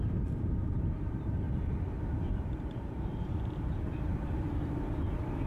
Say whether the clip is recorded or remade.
remade